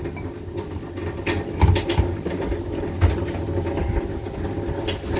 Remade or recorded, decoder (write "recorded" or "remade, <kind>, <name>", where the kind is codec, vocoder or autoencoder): recorded